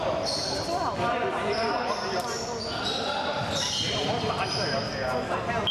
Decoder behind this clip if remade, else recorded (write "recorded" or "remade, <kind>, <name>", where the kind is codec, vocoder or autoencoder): recorded